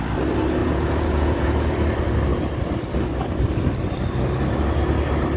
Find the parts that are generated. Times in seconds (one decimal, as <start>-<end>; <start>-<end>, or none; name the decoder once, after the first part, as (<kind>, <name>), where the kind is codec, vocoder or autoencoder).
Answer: 0.6-1.6 (vocoder, Vocos)